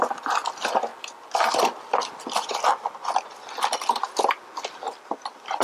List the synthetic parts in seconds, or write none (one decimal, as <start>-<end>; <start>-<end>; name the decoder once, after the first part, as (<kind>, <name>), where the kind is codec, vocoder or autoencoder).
none